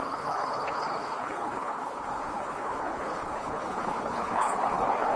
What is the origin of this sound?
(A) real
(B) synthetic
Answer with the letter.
B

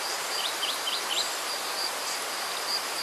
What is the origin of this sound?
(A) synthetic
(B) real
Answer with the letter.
A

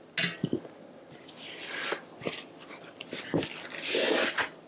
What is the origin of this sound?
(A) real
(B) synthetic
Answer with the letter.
A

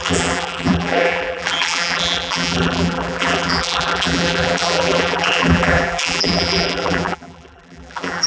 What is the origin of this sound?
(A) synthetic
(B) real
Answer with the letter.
A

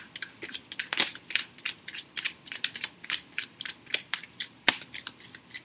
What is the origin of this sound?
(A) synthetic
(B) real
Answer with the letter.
A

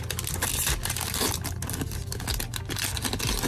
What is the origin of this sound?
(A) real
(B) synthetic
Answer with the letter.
A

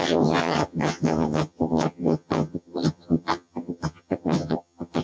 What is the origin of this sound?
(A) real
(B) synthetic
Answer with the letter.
B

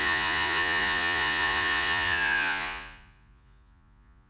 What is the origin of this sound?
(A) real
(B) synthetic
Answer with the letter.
B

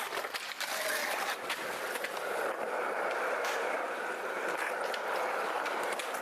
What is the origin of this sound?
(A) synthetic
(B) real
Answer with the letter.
A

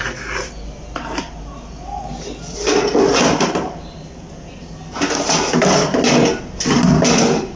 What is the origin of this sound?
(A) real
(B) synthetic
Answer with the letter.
A